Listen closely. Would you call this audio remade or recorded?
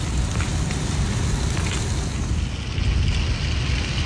recorded